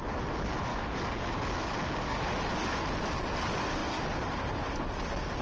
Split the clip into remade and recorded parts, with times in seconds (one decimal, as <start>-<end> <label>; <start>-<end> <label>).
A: 0.0-0.7 recorded; 0.7-2.2 remade; 2.2-5.4 recorded

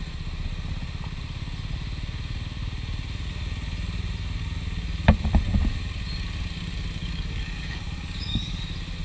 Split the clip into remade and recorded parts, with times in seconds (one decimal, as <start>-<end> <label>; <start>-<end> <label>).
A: 0.0-7.0 recorded; 7.0-8.6 remade; 8.6-9.0 recorded

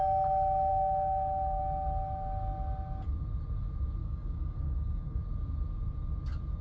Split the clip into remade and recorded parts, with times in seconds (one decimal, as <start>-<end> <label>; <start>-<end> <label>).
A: 0.0-0.7 recorded; 0.7-1.6 remade; 1.6-4.0 recorded; 4.0-5.2 remade; 5.2-6.6 recorded

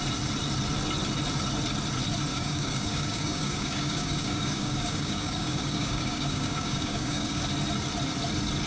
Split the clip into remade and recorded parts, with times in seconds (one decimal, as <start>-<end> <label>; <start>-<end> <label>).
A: 0.0-2.3 recorded; 2.3-7.4 remade; 7.4-8.7 recorded

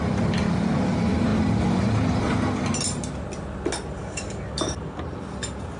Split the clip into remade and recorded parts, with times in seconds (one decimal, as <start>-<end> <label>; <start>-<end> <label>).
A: 0.0-4.0 recorded; 4.0-5.0 remade; 5.0-5.8 recorded

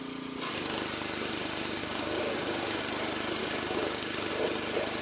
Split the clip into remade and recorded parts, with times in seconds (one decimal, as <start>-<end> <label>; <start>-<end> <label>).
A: 0.0-1.8 recorded; 1.8-2.8 remade; 2.8-3.4 recorded; 3.4-4.3 remade; 4.3-5.0 recorded